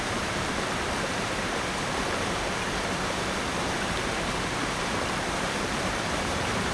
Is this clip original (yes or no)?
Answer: no